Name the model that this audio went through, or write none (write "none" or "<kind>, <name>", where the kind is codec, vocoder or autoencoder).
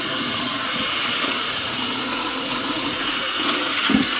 vocoder, Vocos